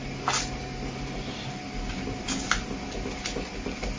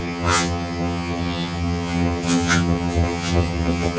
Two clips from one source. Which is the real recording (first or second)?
first